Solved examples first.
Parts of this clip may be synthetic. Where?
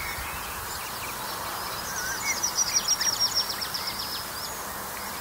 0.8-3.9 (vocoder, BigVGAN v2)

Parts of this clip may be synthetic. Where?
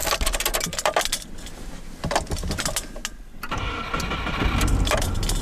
3.2-5.4 (vocoder, BigVGAN v2)